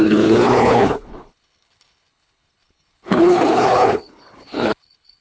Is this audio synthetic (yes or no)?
yes